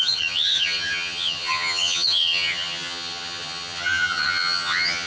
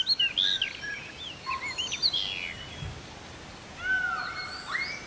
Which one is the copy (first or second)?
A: first